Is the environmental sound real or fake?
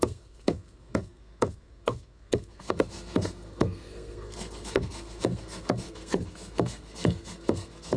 fake